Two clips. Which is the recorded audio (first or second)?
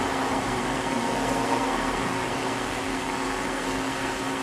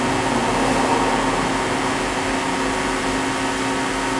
second